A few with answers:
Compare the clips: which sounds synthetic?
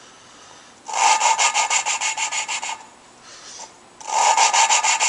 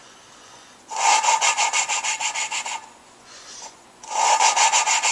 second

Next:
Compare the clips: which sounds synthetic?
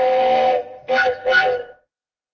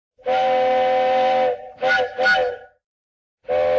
first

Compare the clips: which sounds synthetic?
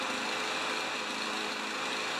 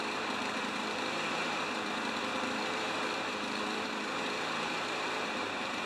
second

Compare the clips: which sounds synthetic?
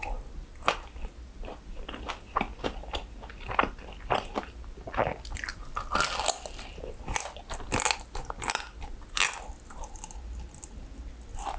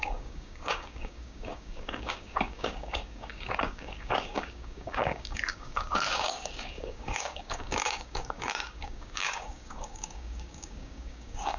second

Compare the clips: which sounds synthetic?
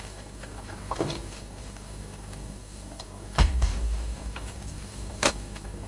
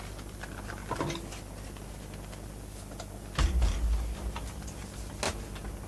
first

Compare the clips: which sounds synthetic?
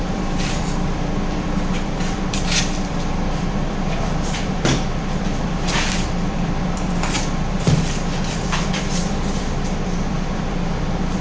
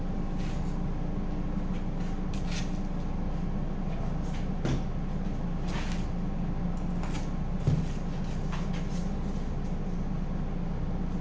first